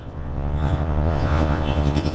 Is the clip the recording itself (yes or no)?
no